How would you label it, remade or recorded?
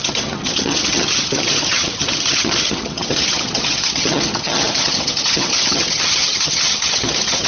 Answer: remade